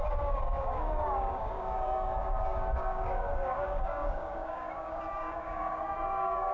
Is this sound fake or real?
fake